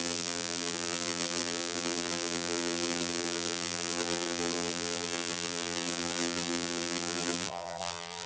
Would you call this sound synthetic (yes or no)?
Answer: yes